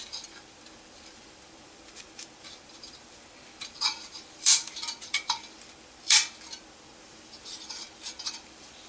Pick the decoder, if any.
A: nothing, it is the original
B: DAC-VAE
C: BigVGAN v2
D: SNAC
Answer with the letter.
C